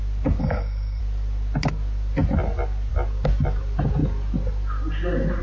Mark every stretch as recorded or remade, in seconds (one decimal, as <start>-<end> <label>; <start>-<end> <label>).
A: 0.0-0.4 recorded; 0.4-1.0 remade; 1.0-5.4 recorded